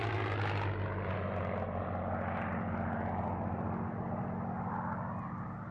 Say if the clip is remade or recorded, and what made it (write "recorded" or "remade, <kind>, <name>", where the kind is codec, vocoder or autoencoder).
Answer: recorded